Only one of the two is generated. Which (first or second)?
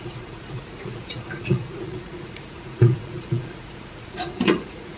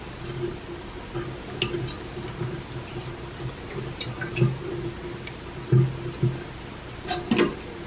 first